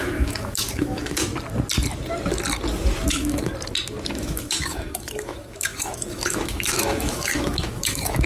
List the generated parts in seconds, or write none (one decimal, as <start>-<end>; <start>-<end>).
0.0-1.3; 3.1-3.5; 4.1-8.3